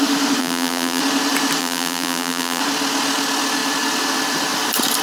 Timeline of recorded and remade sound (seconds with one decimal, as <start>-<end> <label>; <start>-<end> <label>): 0.0-0.4 recorded; 0.4-1.0 remade; 1.0-1.6 recorded; 1.6-2.6 remade; 2.6-5.0 recorded